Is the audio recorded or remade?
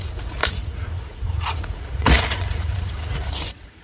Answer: remade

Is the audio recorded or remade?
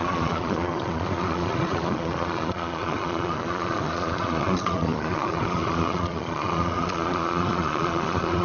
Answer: remade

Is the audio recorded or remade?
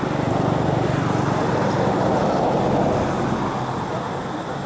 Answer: recorded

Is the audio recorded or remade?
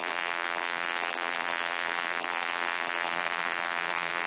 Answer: remade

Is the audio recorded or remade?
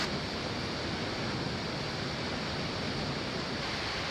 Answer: recorded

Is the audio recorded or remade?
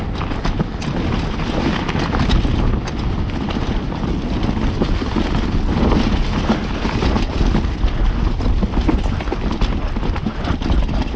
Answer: recorded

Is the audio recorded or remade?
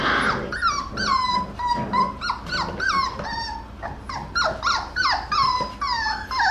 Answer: recorded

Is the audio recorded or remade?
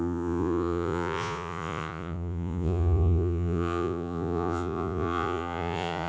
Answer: remade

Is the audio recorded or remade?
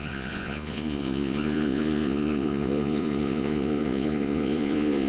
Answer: remade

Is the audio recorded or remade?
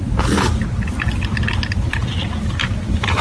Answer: recorded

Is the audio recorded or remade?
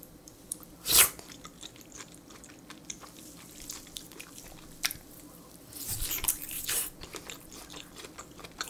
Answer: remade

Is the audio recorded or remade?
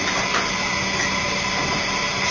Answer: recorded